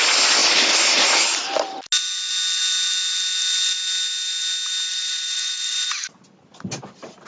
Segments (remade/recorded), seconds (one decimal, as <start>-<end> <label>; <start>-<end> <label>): 0.0-4.9 recorded; 4.9-6.2 remade; 6.2-7.3 recorded